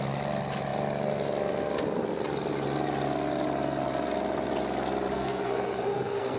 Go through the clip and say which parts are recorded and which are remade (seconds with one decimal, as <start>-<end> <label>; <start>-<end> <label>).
0.0-5.1 recorded; 5.1-6.4 remade